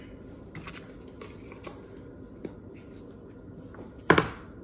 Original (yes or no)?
yes